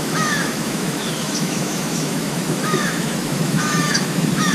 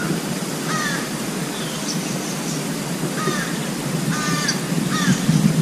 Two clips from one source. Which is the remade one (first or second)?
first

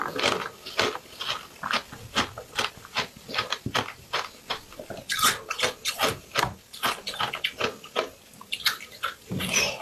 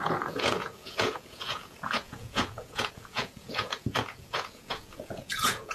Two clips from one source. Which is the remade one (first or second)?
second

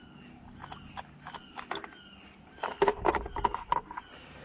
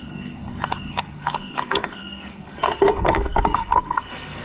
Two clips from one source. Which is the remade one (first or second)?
second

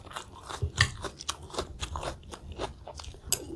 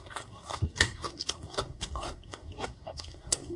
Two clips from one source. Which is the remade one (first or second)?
second